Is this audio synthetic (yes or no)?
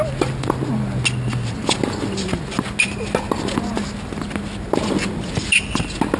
no